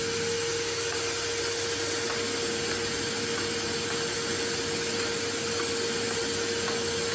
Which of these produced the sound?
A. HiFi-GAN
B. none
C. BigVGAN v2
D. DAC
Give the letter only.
B